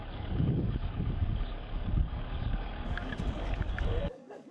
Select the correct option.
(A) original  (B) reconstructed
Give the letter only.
B